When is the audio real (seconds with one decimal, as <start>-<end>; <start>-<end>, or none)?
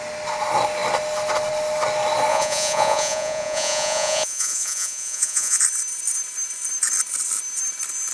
0.0-2.3; 5.6-8.1